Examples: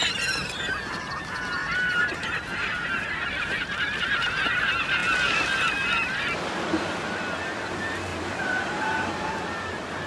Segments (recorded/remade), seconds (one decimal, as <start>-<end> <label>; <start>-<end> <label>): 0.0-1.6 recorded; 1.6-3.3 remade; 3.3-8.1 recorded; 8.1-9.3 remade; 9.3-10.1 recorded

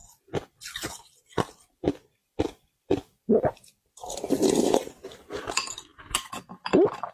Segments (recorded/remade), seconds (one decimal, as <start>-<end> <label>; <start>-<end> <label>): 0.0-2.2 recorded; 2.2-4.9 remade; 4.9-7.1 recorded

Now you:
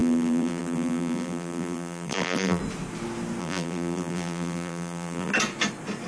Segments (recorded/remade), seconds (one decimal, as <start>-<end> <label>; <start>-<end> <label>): 0.0-2.6 remade; 2.6-3.4 recorded; 3.4-5.3 remade; 5.3-6.1 recorded

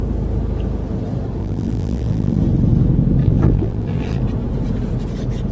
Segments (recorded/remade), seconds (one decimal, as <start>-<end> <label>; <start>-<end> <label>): 0.0-1.4 recorded; 1.4-2.4 remade; 2.4-3.2 recorded; 3.2-4.2 remade; 4.2-5.5 recorded

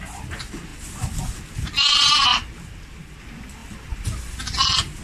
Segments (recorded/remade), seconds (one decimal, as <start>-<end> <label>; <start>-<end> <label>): 0.0-2.3 recorded; 2.3-3.2 remade; 3.2-3.6 recorded; 3.6-4.4 remade; 4.4-5.0 recorded

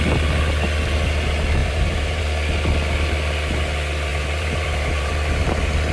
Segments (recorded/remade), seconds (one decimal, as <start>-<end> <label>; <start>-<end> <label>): 0.0-1.6 recorded; 1.6-2.2 remade; 2.2-4.1 recorded; 4.1-5.1 remade; 5.1-5.9 recorded